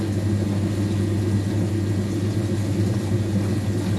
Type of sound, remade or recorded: recorded